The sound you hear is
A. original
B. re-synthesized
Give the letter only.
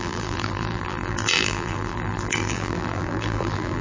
B